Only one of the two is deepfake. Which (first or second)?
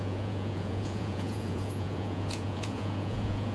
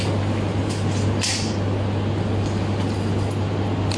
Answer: first